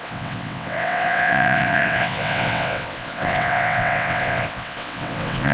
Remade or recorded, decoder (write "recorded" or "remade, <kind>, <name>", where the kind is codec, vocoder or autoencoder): remade, vocoder, WaveNeXt